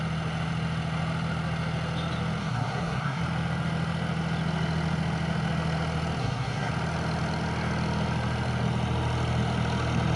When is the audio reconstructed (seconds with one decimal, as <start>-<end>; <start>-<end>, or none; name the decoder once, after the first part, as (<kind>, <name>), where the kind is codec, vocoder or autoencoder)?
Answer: 2.4-3.2 (codec, SNAC); 6.2-6.7